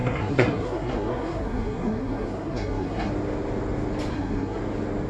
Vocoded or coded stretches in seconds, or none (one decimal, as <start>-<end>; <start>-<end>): 0.0-3.1; 4.1-4.6

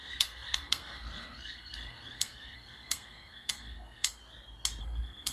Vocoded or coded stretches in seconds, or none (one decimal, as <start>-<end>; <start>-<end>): 0.0-4.2; 4.8-5.3

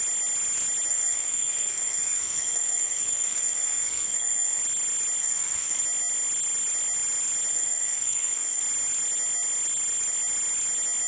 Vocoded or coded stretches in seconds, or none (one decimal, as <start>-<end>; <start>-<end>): 0.9-4.6; 5.2-5.8; 7.5-8.6

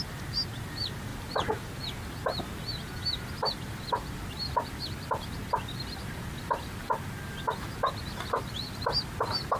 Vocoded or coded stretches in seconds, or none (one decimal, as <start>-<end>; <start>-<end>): none